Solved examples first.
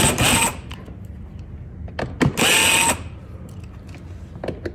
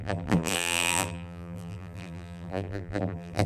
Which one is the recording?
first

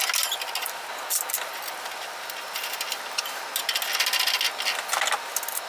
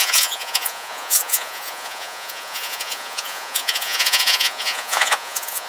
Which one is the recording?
first